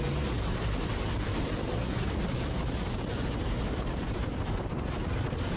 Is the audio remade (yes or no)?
no